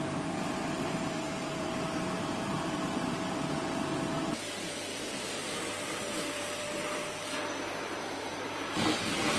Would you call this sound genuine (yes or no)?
no